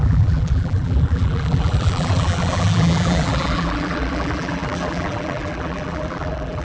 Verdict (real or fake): fake